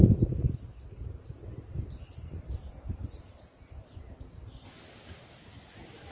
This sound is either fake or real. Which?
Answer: real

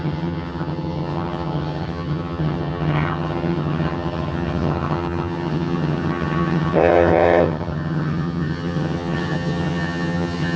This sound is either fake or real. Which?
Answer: fake